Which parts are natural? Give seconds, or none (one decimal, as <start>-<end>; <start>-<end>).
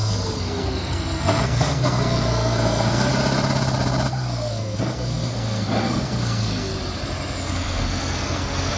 3.1-4.1; 6.7-7.4